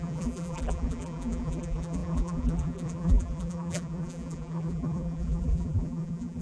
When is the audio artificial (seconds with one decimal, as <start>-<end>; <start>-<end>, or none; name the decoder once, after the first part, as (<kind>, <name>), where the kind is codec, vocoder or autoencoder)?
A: 0.0-6.4 (vocoder, BigVGAN v2)